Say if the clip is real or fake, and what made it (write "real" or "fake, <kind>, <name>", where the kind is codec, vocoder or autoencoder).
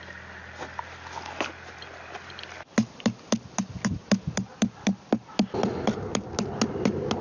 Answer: real